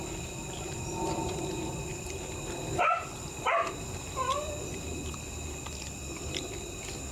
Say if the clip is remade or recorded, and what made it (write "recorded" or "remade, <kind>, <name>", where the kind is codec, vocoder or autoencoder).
recorded